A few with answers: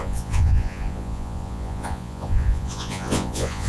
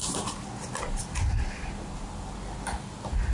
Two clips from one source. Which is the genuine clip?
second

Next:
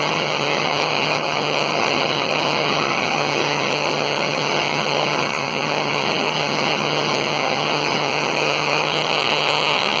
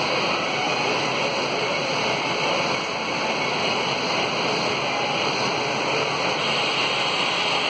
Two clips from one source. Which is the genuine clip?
second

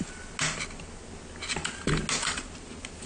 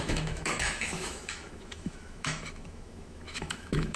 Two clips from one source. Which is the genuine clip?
first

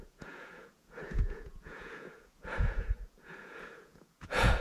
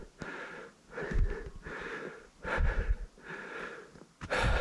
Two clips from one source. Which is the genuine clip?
second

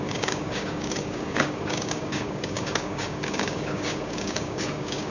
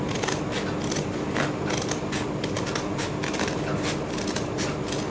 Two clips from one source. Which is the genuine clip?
second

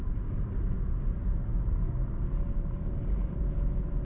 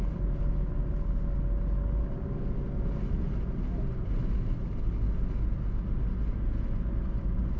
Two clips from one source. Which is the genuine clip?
second